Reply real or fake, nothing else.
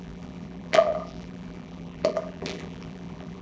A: fake